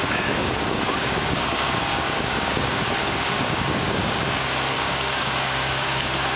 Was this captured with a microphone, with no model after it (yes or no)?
no